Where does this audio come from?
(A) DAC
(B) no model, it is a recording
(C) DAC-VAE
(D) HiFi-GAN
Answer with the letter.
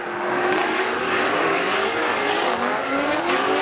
A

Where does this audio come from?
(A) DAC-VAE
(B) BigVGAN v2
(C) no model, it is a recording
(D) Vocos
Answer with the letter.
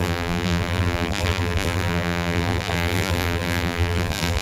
B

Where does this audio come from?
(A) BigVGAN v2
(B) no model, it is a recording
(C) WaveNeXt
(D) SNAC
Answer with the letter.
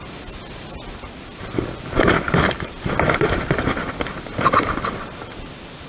A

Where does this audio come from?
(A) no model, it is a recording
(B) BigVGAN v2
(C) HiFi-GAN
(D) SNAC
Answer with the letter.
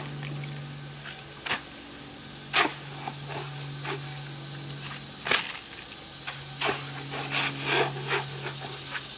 A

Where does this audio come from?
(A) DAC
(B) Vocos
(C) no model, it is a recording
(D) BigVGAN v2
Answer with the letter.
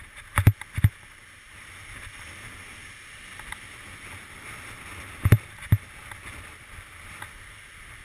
C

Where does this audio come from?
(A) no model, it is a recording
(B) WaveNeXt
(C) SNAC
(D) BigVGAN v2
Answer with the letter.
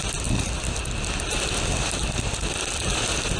A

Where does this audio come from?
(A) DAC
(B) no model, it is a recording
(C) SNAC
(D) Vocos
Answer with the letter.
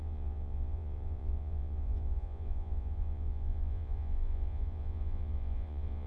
D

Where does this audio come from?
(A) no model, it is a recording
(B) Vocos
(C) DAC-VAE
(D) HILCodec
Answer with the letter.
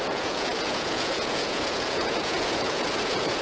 B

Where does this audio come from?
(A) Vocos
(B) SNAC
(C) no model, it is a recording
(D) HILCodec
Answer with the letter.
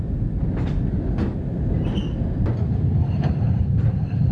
C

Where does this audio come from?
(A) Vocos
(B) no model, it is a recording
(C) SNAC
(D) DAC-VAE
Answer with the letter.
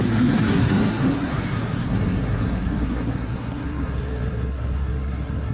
C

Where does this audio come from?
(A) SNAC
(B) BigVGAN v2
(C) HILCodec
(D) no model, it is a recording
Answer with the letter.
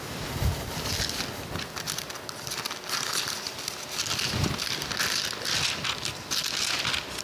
D